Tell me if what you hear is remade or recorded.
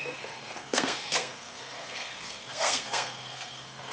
remade